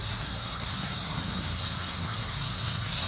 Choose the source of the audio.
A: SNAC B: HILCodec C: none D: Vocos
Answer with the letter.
A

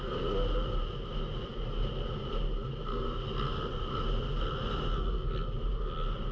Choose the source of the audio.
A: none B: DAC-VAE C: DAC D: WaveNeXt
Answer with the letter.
A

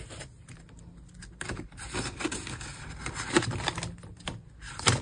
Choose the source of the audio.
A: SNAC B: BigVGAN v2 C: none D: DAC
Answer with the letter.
C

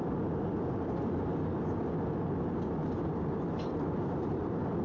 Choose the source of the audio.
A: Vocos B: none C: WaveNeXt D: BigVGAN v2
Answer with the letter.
B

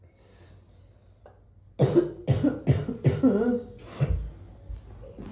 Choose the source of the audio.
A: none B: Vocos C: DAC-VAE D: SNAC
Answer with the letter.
A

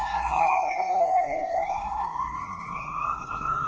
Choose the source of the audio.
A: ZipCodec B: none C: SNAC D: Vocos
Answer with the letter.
C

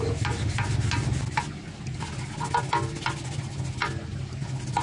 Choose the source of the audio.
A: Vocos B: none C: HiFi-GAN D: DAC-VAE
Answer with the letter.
B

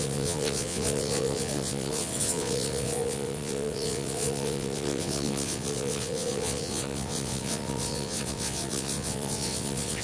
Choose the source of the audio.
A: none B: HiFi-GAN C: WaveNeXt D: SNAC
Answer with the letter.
C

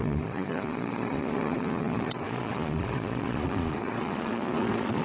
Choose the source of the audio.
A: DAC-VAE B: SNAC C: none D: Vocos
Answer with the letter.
D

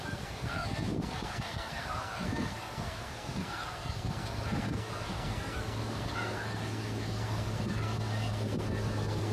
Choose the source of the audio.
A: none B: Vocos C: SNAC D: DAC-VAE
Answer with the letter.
C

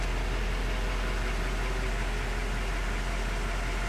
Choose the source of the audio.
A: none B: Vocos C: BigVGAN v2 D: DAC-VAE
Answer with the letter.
A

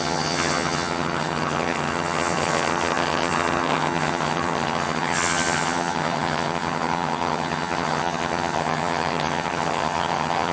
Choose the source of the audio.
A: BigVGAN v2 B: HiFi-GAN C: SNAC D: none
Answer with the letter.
B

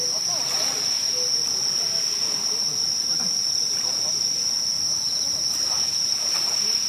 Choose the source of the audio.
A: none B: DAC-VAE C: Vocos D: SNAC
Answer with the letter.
A